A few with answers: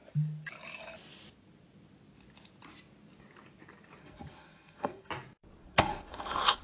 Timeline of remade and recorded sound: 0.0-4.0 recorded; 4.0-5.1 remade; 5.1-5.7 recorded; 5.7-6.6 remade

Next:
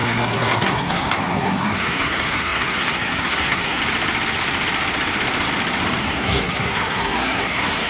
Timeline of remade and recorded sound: 0.0-3.8 remade; 3.8-6.0 recorded; 6.0-7.9 remade

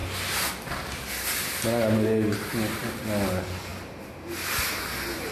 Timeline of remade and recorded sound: 0.0-5.3 recorded

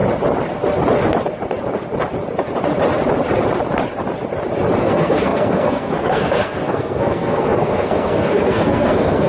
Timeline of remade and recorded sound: 0.0-4.8 recorded; 4.8-9.3 remade

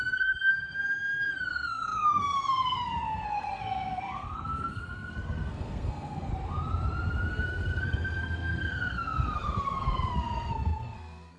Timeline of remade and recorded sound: 0.0-6.3 remade; 6.3-7.3 recorded; 7.3-11.4 remade

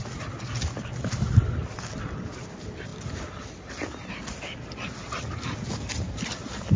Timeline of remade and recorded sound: 0.0-6.8 recorded